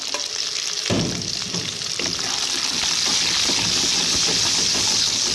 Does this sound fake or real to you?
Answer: real